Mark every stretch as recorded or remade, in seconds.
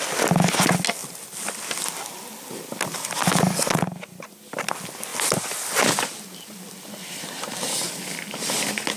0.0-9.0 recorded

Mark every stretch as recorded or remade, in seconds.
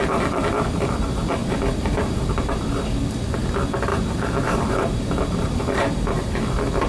0.0-1.4 recorded; 1.4-2.3 remade; 2.3-3.9 recorded; 3.9-6.4 remade; 6.4-6.9 recorded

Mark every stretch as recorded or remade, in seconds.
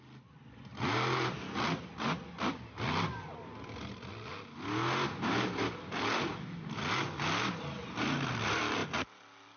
0.0-9.6 recorded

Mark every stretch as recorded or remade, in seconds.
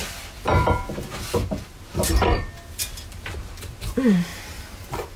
0.0-3.1 recorded; 3.1-5.2 remade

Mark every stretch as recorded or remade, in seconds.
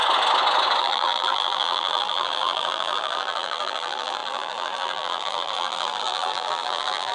0.0-0.8 recorded; 0.8-7.1 remade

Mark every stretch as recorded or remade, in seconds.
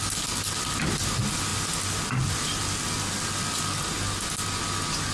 0.0-5.1 recorded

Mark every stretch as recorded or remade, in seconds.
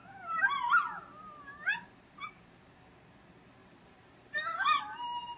0.0-3.6 recorded; 3.6-4.8 remade; 4.8-5.4 recorded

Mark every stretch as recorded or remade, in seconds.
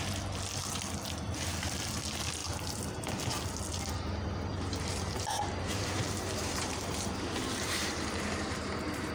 0.0-4.5 recorded; 4.5-9.1 remade